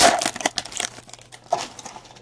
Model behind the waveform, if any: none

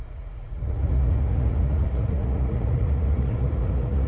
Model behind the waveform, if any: vocoder, Vocos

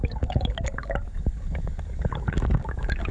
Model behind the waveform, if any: codec, DAC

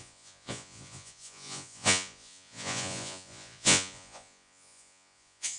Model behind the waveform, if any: vocoder, Vocos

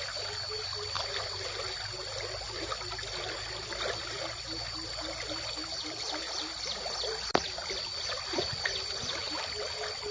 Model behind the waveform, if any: none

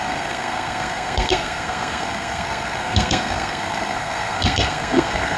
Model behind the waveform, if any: codec, SNAC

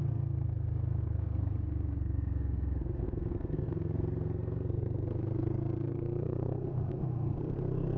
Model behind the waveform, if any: codec, SNAC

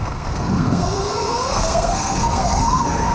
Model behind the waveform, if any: codec, SNAC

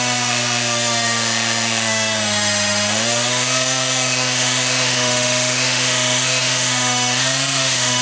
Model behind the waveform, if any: autoencoder, DAC-VAE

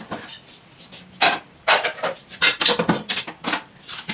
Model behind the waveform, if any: none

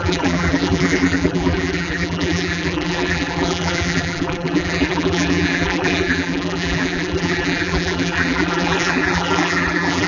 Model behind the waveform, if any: vocoder, BigVGAN v2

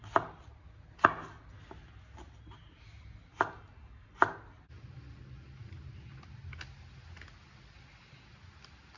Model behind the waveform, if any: none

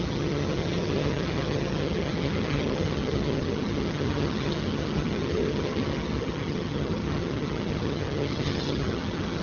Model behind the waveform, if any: vocoder, HiFi-GAN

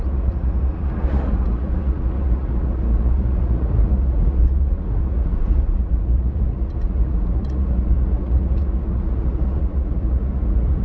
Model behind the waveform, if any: vocoder, Vocos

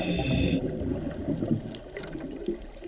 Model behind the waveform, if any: none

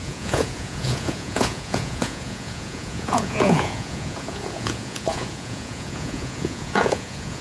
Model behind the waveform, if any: vocoder, Vocos